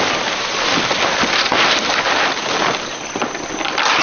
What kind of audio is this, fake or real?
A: fake